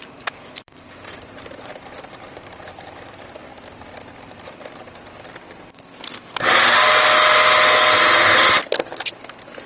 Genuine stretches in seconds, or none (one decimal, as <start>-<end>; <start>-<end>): 3.5-8.2; 8.6-9.7